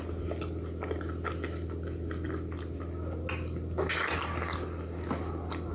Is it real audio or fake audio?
real